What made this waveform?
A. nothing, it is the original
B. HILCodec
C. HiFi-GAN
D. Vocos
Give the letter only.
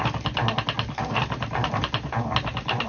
A